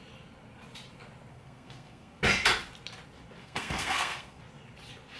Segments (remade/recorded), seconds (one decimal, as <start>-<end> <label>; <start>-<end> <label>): 0.0-1.3 recorded; 1.3-2.2 remade; 2.2-3.4 recorded; 3.4-4.4 remade; 4.4-5.2 recorded